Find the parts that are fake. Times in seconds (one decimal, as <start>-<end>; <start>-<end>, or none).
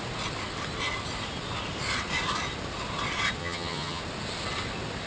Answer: 3.4-4.0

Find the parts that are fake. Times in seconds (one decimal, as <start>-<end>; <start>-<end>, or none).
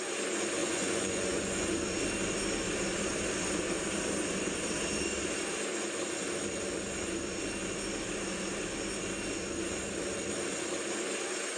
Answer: 0.6-1.7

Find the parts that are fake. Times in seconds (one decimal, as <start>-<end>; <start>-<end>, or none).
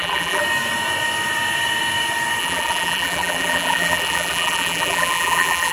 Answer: 0.0-0.4; 2.4-5.7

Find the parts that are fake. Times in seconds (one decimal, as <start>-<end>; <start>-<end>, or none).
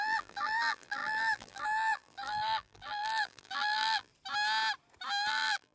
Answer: 0.0-4.1; 5.3-5.7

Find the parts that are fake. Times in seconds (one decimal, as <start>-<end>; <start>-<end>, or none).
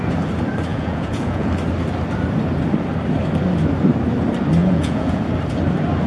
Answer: 0.7-1.5; 4.6-5.2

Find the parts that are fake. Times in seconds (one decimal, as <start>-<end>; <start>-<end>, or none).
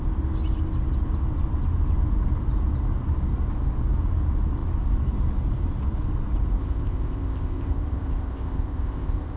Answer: 6.6-9.4